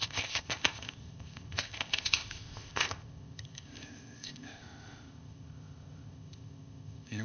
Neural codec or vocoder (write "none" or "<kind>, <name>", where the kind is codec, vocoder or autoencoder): codec, ZipCodec